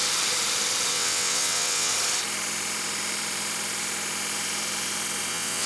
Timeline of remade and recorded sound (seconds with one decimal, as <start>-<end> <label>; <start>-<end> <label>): 0.0-0.9 recorded; 0.9-1.9 remade; 1.9-5.3 recorded; 5.3-5.7 remade